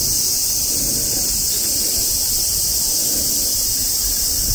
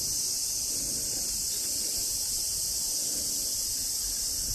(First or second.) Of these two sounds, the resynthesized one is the second